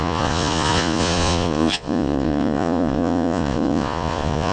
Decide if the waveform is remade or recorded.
remade